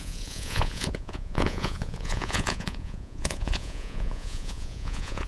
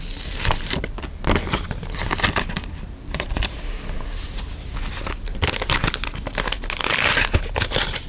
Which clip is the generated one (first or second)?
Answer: first